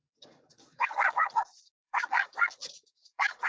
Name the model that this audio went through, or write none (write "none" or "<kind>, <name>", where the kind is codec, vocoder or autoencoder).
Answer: codec, DAC